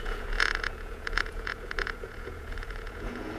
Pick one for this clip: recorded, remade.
remade